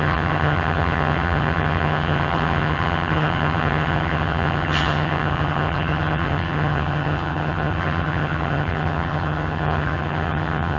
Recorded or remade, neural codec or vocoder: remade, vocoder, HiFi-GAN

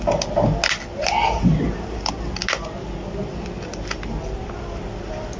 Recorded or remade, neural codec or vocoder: recorded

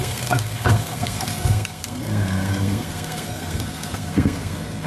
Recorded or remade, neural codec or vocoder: remade, codec, SNAC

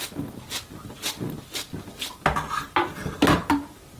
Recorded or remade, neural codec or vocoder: recorded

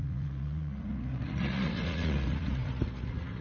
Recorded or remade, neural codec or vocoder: remade, vocoder, Vocos